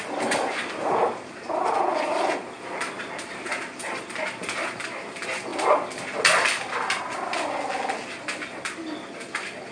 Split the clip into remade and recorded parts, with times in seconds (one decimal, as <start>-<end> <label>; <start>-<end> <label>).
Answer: 0.0-9.7 recorded